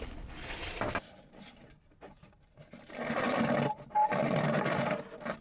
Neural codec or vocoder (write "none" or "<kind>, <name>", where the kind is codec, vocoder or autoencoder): none